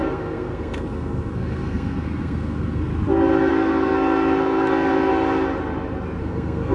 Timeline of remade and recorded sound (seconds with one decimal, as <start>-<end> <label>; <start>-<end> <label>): 0.0-2.9 remade; 2.9-3.5 recorded; 3.5-5.1 remade; 5.1-6.2 recorded; 6.2-6.7 remade